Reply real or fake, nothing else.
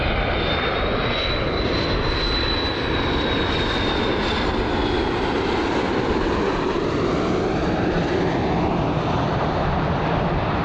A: real